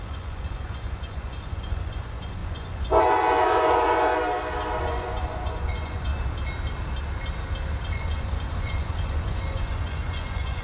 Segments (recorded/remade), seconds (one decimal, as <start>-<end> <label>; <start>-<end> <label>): 0.0-4.1 remade; 4.1-4.8 recorded; 4.8-6.1 remade; 6.1-7.9 recorded; 7.9-10.6 remade